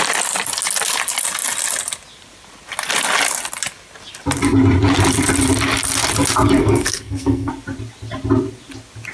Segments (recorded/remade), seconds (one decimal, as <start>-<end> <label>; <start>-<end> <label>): 0.0-6.6 recorded; 6.6-7.5 remade; 7.5-9.1 recorded